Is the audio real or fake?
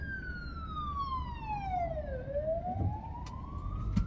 real